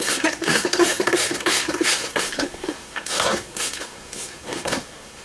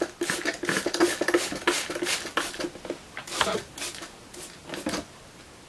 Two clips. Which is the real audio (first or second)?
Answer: second